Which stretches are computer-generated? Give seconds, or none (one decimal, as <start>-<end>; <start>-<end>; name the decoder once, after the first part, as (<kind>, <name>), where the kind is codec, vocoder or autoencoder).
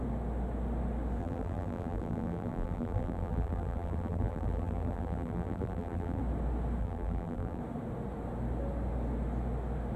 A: 1.2-6.2 (vocoder, BigVGAN v2); 6.8-7.6